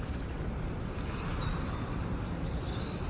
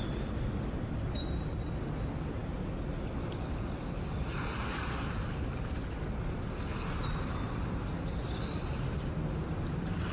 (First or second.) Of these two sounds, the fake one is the first